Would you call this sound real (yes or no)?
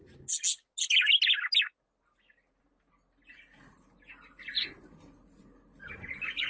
yes